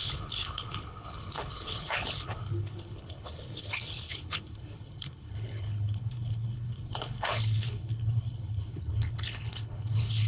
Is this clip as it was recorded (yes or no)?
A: no